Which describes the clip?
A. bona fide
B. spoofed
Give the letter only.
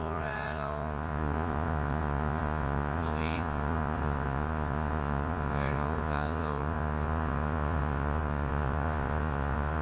B